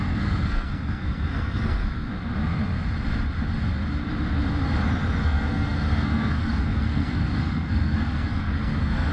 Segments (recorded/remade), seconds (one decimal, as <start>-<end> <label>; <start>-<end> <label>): 0.0-2.1 remade; 2.1-5.2 recorded; 5.2-9.1 remade